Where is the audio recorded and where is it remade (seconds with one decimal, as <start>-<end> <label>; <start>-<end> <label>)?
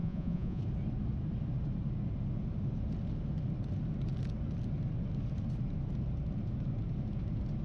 0.0-0.6 remade; 0.6-7.6 recorded